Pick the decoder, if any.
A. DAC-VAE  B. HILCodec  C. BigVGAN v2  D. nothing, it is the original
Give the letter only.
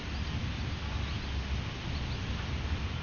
D